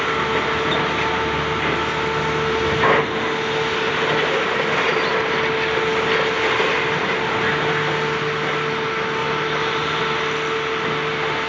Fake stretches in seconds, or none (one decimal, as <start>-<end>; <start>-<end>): 9.2-10.0